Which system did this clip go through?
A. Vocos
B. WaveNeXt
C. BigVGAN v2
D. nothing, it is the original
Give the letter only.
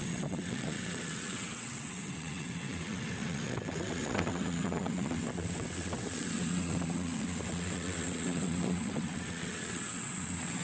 B